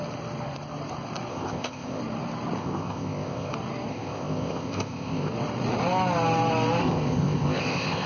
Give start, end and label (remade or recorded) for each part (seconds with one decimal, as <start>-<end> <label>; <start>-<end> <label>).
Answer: 0.0-1.3 recorded; 1.3-2.0 remade; 2.0-2.6 recorded; 2.6-3.5 remade; 3.5-3.9 recorded; 3.9-5.3 remade; 5.3-6.8 recorded; 6.8-8.1 remade